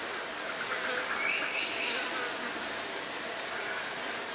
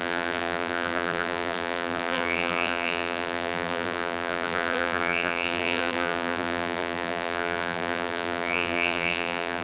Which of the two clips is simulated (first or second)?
second